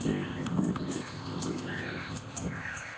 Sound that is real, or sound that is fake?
fake